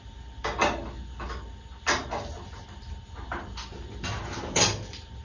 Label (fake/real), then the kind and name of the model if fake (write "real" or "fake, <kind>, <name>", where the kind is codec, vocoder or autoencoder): real